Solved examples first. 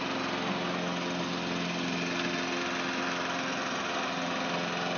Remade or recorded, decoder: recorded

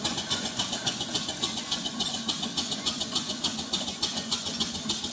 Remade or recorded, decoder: remade, vocoder, Vocos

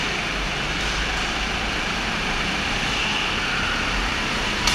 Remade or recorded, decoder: recorded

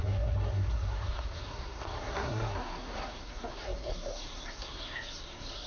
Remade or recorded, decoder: remade, codec, SNAC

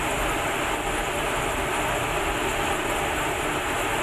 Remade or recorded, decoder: recorded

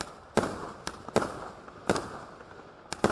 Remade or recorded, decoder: recorded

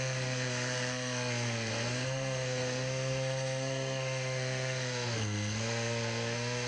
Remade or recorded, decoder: remade, codec, SNAC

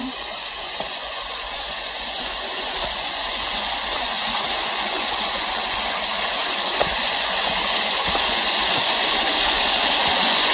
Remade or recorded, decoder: remade, vocoder, Vocos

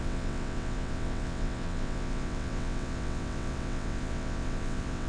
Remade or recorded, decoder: remade, vocoder, WaveNeXt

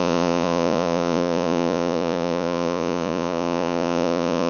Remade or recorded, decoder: remade, vocoder, Vocos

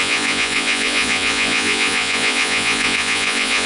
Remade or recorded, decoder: remade, vocoder, Vocos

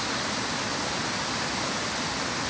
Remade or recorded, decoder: recorded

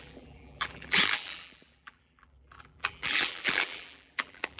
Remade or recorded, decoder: remade, vocoder, BigVGAN v2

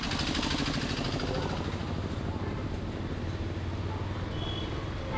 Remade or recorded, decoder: recorded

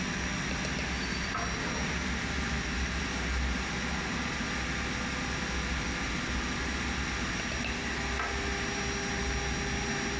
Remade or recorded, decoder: recorded